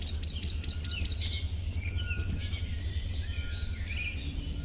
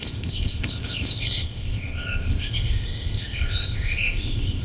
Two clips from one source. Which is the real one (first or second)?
first